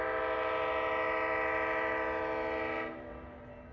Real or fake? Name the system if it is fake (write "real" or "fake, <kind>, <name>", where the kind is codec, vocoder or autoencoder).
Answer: real